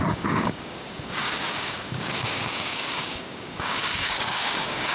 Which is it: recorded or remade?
remade